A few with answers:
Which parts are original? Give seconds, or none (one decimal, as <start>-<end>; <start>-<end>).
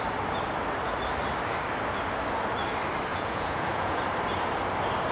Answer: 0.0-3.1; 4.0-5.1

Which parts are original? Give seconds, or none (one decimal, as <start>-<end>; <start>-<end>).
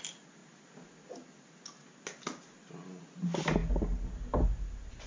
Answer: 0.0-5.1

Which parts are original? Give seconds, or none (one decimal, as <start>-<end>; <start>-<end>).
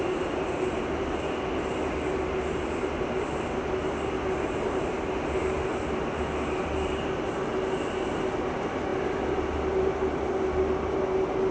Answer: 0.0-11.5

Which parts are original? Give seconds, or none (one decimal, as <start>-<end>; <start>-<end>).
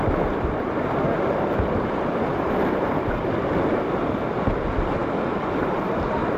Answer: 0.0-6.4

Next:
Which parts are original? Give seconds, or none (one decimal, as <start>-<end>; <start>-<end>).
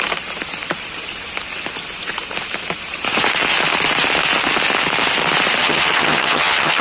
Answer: 0.0-5.6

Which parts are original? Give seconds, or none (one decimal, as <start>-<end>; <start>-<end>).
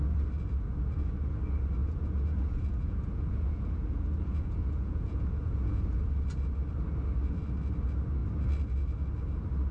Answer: 0.0-1.8; 6.1-9.7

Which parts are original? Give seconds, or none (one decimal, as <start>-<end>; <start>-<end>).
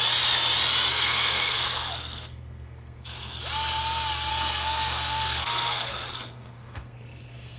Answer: 0.0-0.9; 3.4-4.3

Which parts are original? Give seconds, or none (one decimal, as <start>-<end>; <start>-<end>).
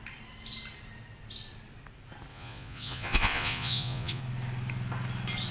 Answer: 0.0-2.3; 4.2-5.5